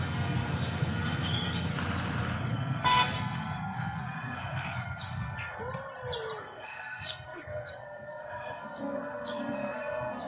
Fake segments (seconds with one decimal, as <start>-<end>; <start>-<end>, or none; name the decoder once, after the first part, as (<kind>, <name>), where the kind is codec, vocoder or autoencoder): 0.0-1.7 (codec, SNAC); 2.5-5.6; 6.4-10.3